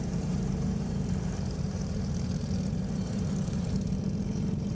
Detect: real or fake fake